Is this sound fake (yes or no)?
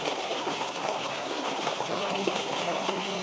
yes